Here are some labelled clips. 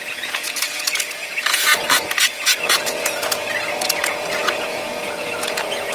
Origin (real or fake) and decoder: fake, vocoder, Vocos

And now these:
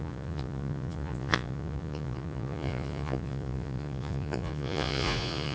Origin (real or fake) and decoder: fake, vocoder, Vocos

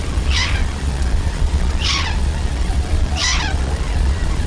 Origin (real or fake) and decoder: fake, vocoder, Vocos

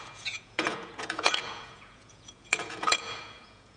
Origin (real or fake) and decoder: fake, vocoder, Vocos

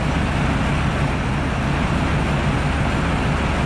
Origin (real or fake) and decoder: real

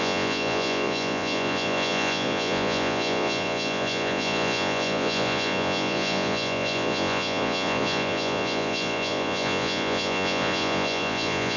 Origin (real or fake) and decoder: fake, vocoder, Vocos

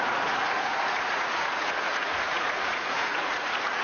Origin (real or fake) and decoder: fake, vocoder, Vocos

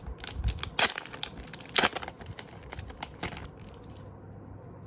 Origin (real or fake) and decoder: real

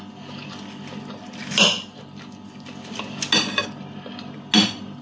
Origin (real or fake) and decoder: real